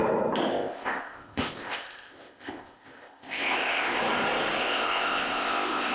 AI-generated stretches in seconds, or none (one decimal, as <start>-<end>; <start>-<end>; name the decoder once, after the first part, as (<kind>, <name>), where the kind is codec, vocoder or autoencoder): 0.5-4.0 (codec, ZipCodec); 4.6-5.9